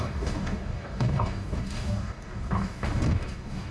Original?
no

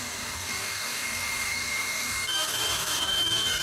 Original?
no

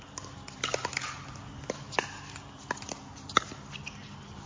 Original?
yes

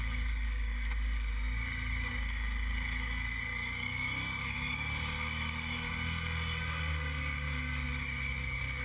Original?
no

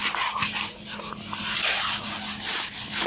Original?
yes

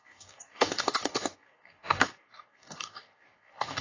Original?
no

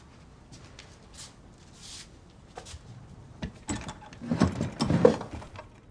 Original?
yes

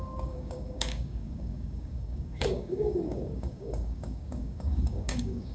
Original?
no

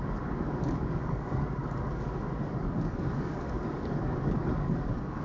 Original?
no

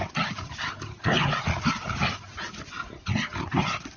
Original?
yes